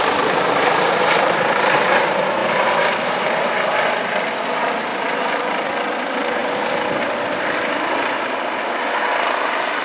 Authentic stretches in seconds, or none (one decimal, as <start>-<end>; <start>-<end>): 0.0-4.9; 5.6-9.8